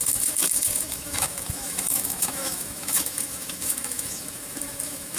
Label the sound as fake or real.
fake